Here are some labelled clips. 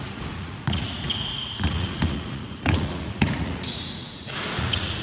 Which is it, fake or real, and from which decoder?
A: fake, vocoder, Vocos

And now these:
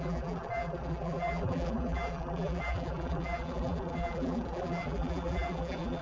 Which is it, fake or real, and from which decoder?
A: fake, vocoder, BigVGAN v2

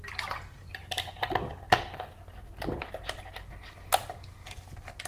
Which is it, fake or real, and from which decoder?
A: real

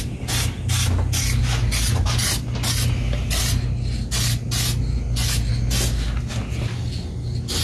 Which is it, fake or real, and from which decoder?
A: real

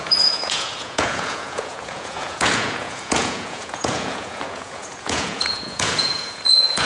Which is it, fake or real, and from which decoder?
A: fake, vocoder, Vocos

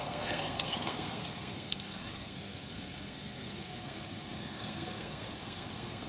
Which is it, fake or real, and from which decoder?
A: fake, codec, SNAC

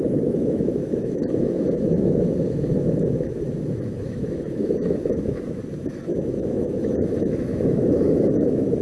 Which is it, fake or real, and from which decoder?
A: fake, autoencoder, DAC-VAE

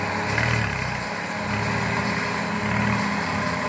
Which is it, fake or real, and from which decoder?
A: real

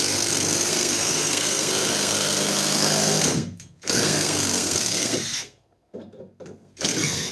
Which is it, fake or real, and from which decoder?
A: fake, codec, SNAC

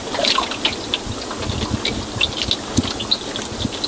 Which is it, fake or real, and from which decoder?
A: real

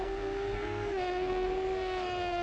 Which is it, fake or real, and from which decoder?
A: fake, codec, SNAC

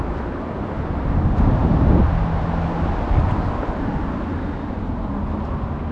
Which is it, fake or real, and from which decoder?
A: real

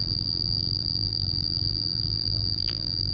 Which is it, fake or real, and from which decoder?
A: fake, vocoder, BigVGAN v2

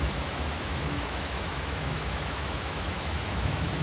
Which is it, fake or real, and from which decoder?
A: fake, autoencoder, DAC-VAE